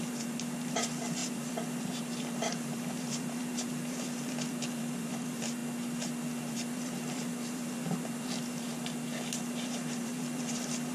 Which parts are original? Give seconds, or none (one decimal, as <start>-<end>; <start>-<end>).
5.6-6.5; 8.7-9.4